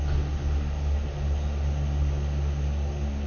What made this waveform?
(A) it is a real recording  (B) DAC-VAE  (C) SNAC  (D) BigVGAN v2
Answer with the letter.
A